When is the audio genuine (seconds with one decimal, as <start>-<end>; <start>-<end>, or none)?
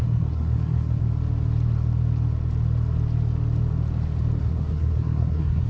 1.0-4.4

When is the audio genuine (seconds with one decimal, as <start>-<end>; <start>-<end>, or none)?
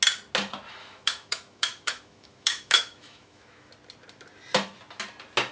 0.0-0.8; 3.7-5.5